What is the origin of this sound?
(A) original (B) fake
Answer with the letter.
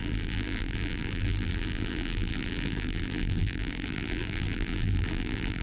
B